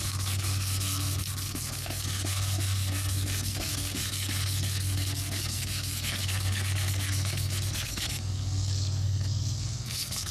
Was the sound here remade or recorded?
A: remade